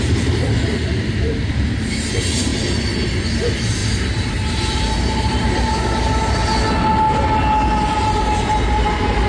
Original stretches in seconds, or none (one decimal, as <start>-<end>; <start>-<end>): 2.5-3.3; 3.8-4.3; 6.4-8.2